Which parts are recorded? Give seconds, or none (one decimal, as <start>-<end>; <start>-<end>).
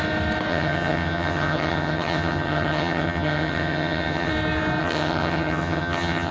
0.0-0.5; 4.3-4.8